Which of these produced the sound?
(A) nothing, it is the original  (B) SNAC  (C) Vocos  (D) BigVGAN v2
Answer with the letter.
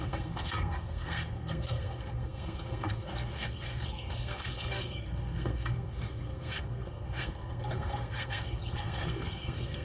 B